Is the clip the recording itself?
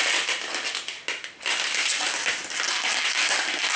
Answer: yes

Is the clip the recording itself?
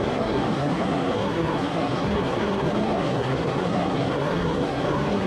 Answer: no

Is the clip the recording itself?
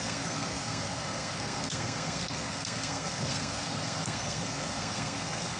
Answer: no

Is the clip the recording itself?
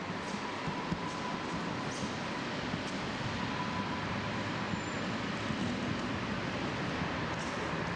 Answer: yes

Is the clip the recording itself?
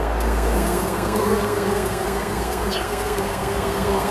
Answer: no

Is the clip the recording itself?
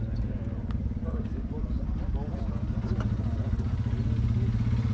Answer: yes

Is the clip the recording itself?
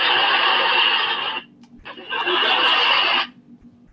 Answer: yes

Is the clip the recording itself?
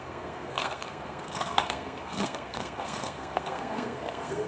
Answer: no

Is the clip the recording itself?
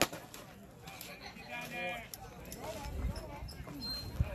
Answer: yes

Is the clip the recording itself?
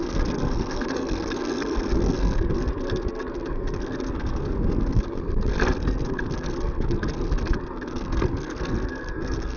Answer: no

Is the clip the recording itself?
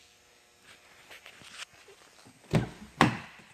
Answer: yes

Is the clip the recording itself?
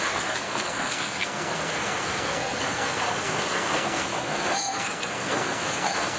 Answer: no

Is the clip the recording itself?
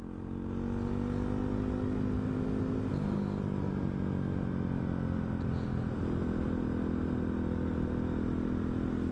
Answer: yes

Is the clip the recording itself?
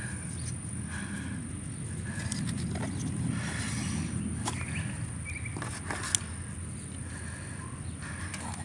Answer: yes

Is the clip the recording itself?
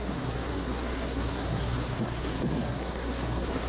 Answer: no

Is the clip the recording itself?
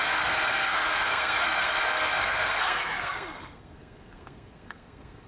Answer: no